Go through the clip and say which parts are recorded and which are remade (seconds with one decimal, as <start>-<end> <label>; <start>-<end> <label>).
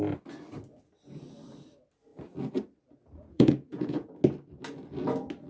0.0-3.3 recorded; 3.3-4.1 remade; 4.1-5.5 recorded